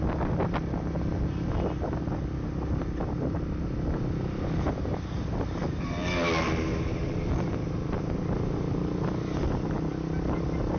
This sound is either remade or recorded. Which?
recorded